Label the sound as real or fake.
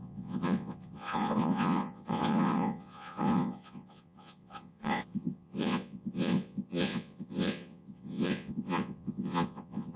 fake